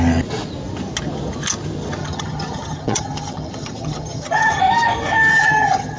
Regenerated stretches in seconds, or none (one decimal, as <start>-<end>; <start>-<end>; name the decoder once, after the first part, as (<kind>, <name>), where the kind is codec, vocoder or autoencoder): 2.0-4.6 (vocoder, HiFi-GAN); 5.3-6.0